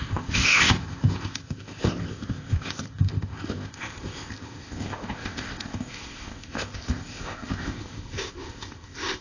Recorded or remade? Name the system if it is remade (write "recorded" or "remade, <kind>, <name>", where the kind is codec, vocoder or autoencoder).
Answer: remade, codec, ZipCodec